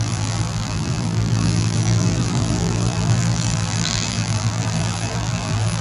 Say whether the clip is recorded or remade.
remade